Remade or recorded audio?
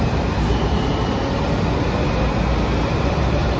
recorded